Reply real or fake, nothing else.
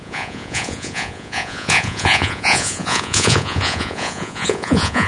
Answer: fake